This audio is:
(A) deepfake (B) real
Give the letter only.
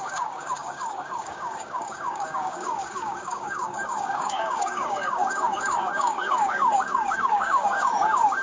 A